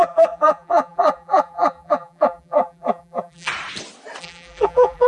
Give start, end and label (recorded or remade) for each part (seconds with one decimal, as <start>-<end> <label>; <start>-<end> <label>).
0.0-3.5 remade; 3.5-4.2 recorded; 4.2-5.1 remade